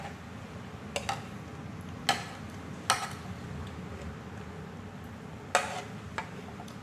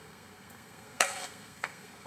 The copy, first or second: second